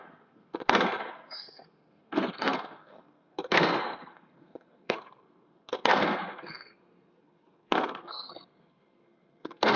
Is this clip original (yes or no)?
no